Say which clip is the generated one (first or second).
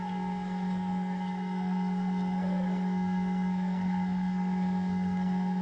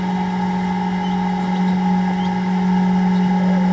first